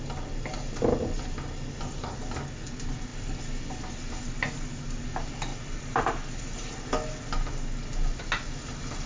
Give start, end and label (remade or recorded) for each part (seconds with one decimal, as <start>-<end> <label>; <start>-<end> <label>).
0.0-9.1 recorded